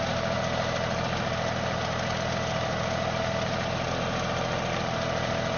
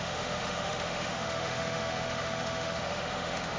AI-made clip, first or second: second